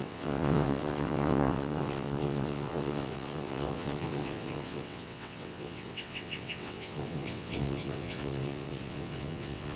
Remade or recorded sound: remade